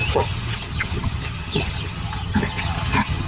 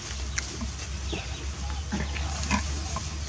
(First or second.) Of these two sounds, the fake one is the first